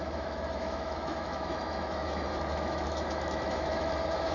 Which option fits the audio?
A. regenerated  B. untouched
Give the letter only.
A